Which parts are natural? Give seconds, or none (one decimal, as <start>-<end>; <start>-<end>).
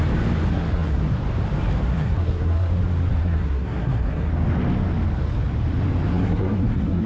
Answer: 0.0-0.5; 1.0-1.9; 2.7-3.2; 4.3-6.1